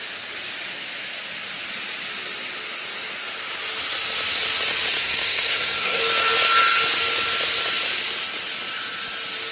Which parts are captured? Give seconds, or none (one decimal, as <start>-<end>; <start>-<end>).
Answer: 0.0-4.9; 6.0-9.5